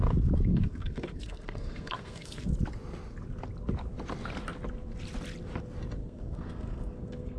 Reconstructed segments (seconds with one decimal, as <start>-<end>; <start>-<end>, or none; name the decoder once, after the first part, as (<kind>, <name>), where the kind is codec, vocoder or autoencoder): 0.5-2.5 (codec, SNAC); 6.0-7.4